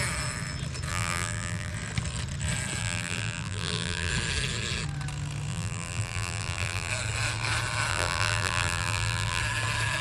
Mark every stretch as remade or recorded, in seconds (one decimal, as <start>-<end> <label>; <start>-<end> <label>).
0.0-0.9 recorded; 0.9-1.7 remade; 1.7-2.8 recorded; 2.8-4.1 remade; 4.1-5.5 recorded; 5.5-6.9 remade; 6.9-7.9 recorded; 7.9-9.4 remade; 9.4-10.0 recorded